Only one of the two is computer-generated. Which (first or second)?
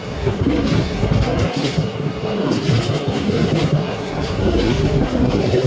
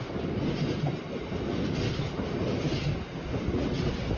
first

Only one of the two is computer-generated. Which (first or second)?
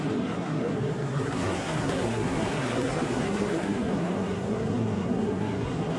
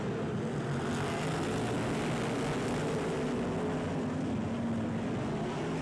first